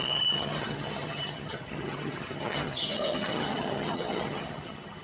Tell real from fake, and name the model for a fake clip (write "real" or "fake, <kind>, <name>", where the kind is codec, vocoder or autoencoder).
fake, vocoder, HiFi-GAN